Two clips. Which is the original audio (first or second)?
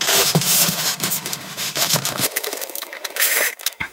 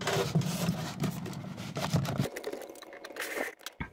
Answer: second